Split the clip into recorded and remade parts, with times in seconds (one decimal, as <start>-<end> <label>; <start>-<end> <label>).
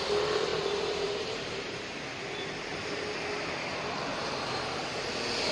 0.0-0.5 recorded; 0.5-1.9 remade; 1.9-2.7 recorded; 2.7-3.2 remade; 3.2-4.1 recorded; 4.1-5.1 remade; 5.1-5.5 recorded